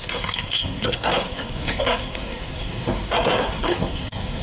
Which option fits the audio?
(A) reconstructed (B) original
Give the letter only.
A